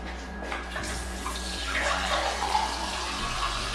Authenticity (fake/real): fake